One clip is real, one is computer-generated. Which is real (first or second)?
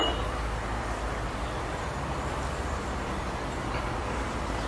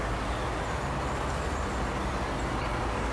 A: second